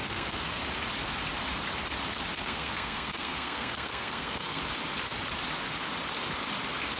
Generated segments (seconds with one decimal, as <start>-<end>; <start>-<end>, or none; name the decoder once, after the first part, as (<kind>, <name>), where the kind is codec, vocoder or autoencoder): 0.0-0.6 (codec, SNAC); 2.3-4.6

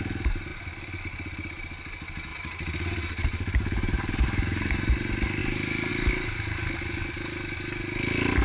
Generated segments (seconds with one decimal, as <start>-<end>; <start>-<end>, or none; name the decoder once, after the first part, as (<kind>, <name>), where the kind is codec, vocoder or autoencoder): 2.3-4.9 (vocoder, BigVGAN v2); 5.4-5.9